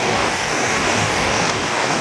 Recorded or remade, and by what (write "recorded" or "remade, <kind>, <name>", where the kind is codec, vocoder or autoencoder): remade, codec, DAC